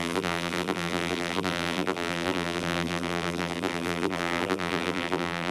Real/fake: fake